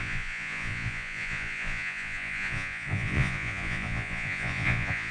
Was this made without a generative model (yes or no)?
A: no